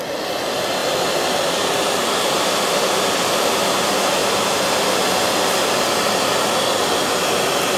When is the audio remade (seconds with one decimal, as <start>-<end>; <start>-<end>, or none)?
0.8-2.7; 4.2-5.7